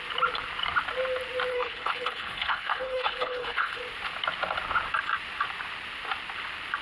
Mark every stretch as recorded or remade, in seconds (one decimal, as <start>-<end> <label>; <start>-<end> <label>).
0.0-1.5 recorded; 1.5-3.8 remade; 3.8-6.8 recorded